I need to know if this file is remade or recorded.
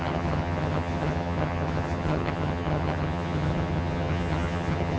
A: remade